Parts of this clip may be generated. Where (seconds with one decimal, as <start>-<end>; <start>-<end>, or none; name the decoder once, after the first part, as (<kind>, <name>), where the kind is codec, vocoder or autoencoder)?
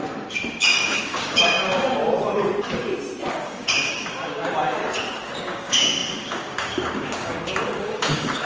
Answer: 0.6-2.0 (codec, DAC); 3.3-4.8; 5.4-8.5